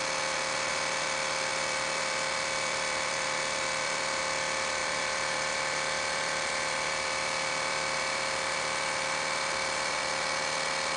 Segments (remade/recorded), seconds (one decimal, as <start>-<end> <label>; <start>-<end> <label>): 0.0-1.5 recorded; 1.5-4.2 remade; 4.2-4.8 recorded; 4.8-10.0 remade; 10.0-11.0 recorded